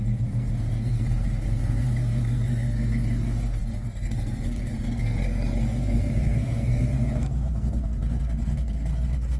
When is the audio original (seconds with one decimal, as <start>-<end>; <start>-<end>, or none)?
none